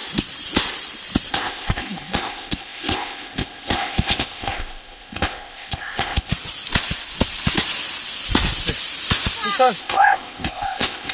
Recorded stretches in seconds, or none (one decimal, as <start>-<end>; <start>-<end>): 0.0-1.3; 6.3-9.8